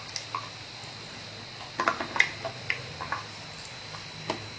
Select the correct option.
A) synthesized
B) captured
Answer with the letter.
B